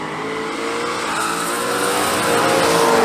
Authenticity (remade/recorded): recorded